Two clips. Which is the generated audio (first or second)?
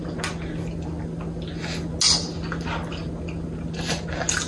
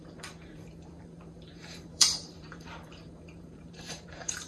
second